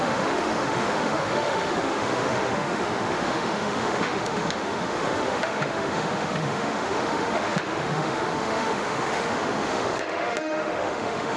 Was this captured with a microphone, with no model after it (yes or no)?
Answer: no